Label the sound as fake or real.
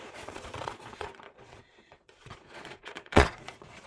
fake